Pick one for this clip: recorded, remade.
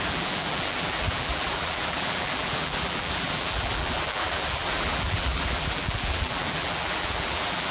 remade